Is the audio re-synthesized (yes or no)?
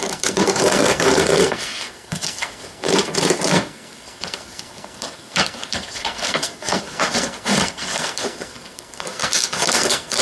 yes